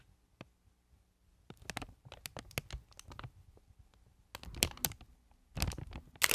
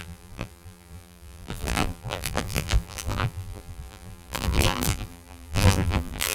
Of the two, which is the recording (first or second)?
first